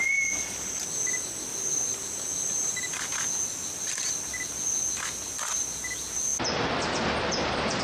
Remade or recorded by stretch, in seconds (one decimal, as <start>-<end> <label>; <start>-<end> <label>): 0.0-6.3 recorded; 6.3-7.8 remade